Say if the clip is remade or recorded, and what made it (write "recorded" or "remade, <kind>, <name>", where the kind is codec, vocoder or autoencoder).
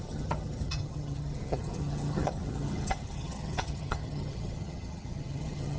remade, vocoder, HiFi-GAN